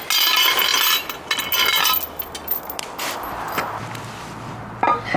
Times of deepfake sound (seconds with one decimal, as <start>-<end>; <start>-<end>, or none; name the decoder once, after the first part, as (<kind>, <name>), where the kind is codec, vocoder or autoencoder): none